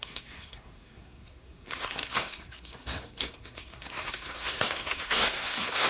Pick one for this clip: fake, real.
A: fake